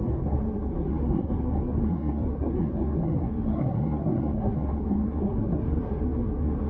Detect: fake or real fake